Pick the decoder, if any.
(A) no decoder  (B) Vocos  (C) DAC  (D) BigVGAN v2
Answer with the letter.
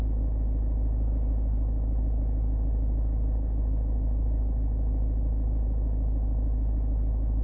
A